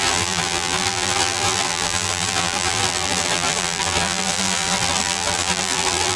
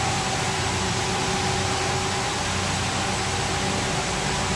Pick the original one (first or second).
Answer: second